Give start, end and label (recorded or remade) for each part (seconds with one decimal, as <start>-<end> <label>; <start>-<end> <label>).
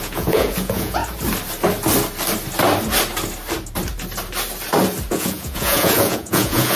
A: 0.0-1.0 remade; 1.0-5.1 recorded; 5.1-6.8 remade